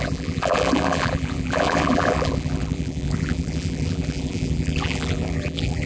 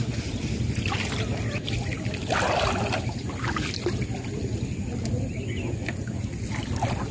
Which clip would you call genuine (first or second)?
second